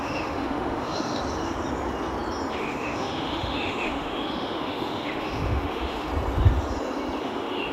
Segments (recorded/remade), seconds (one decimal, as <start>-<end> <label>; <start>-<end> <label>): 0.0-1.2 remade; 1.2-2.5 recorded; 2.5-6.1 remade; 6.1-7.2 recorded; 7.2-7.7 remade